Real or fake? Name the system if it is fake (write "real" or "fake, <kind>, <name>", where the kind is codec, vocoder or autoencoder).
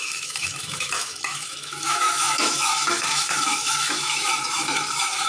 fake, autoencoder, DAC-VAE